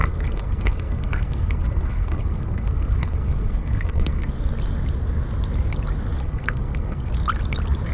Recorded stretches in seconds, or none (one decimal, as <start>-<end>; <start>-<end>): 4.3-6.2; 7.1-7.9